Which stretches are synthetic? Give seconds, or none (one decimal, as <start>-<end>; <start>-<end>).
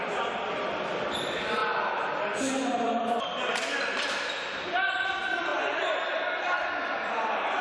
none